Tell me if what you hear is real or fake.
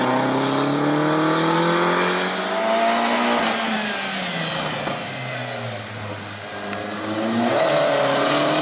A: real